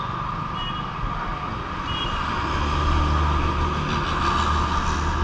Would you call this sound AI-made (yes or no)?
no